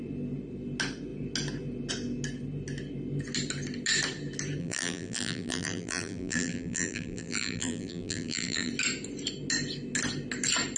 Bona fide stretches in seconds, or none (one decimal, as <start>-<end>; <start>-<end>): 0.0-4.6; 8.7-10.8